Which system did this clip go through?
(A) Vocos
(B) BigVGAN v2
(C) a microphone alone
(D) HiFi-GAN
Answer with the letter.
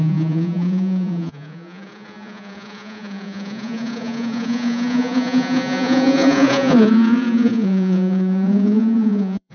A